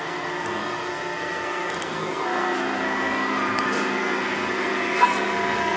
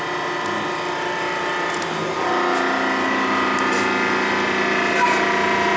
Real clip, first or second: second